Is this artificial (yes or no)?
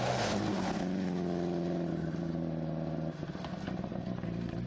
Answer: no